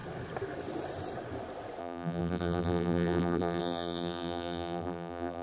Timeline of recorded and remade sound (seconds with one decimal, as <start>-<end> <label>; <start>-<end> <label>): 0.0-1.8 recorded; 1.8-5.4 remade